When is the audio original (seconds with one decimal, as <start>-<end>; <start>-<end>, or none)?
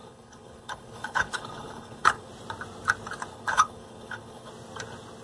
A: 2.3-3.3; 4.5-5.2